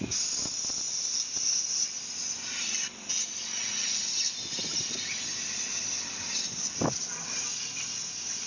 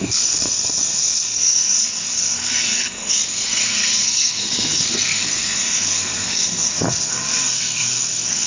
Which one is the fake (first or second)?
second